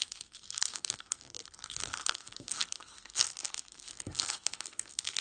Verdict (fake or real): fake